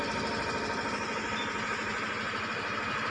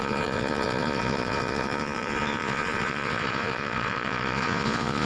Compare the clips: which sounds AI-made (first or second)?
second